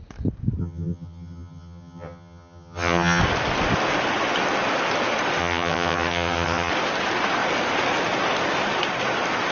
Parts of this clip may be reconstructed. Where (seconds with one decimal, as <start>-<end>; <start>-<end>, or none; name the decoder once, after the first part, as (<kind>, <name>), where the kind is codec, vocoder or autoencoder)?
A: 0.6-3.2 (vocoder, HiFi-GAN); 5.4-6.7